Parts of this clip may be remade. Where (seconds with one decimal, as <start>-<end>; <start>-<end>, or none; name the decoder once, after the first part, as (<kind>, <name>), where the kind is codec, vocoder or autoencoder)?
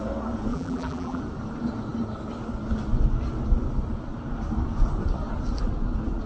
0.5-1.2 (vocoder, BigVGAN v2)